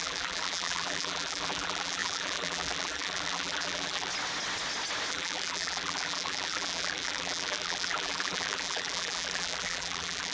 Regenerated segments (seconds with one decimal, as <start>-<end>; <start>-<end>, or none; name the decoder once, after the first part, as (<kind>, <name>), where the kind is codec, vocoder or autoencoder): 0.0-4.1 (vocoder, BigVGAN v2); 5.1-10.3